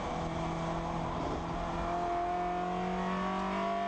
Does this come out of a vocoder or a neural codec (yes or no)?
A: no